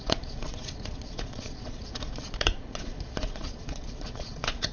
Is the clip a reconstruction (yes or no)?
yes